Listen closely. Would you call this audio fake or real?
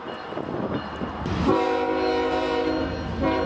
real